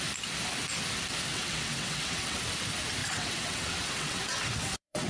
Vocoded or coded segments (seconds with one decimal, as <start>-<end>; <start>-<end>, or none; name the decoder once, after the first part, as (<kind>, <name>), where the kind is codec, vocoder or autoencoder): 1.3-2.4 (vocoder, WaveNeXt); 3.0-5.1